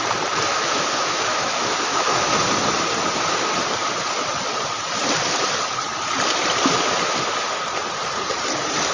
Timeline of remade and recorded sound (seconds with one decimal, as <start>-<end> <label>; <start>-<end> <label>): 0.0-0.5 recorded; 0.5-2.4 remade; 2.4-8.9 recorded